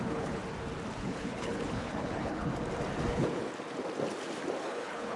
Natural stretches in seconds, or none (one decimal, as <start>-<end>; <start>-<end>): 0.4-0.9; 2.5-3.1; 3.5-4.6

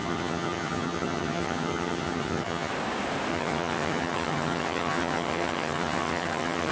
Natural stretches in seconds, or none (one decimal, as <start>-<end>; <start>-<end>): 2.7-3.3

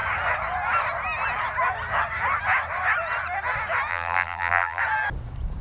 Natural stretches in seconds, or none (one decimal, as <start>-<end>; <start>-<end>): 0.0-3.9; 4.8-5.6

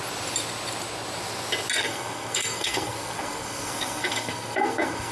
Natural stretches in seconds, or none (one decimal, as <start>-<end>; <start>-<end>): 0.0-1.8

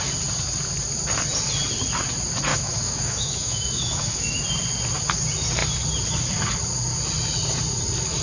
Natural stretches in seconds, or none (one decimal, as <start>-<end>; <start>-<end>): 0.0-2.5; 4.4-8.2

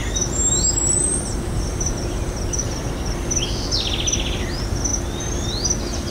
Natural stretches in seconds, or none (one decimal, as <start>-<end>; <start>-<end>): 0.0-1.0; 2.6-6.1

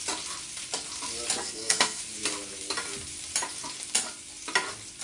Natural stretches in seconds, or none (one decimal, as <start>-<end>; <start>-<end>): 0.0-1.4; 2.0-5.0

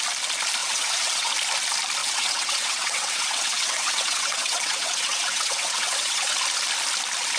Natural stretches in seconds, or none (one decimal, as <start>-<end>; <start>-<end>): 0.0-0.6; 1.3-2.0; 6.4-7.4